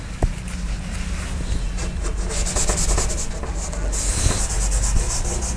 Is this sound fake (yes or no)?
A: no